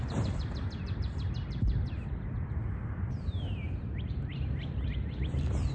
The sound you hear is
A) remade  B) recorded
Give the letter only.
A